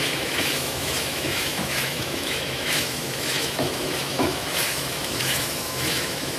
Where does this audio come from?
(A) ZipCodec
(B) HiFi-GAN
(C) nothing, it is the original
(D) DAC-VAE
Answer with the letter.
D